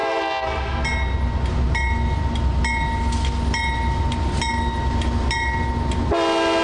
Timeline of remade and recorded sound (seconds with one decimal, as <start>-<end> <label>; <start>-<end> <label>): 0.0-6.6 recorded

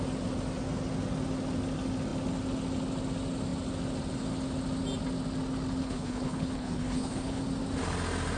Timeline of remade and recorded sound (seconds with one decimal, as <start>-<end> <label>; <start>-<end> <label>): 0.0-5.8 recorded; 5.8-7.4 remade; 7.4-8.4 recorded

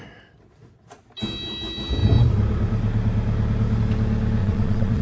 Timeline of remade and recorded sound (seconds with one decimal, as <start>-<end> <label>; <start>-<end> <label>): 0.0-4.4 recorded; 4.4-5.0 remade